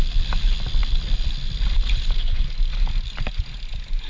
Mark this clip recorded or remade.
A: recorded